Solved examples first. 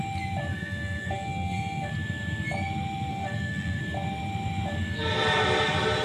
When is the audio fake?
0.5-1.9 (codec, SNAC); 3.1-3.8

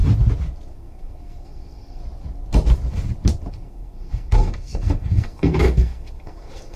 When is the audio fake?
0.7-2.0 (codec, SNAC); 3.5-6.8

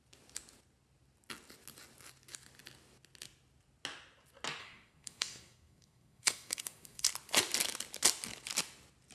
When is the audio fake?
4.6-7.1 (codec, SNAC)

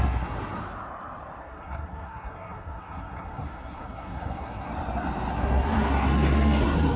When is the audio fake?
0.0-0.6 (codec, SNAC); 1.4-4.7; 5.3-7.0

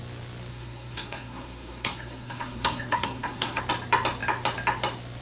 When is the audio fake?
0.5-3.6 (codec, SNAC)